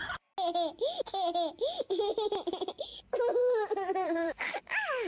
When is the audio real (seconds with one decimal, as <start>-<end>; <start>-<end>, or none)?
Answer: 0.0-3.4; 4.6-5.1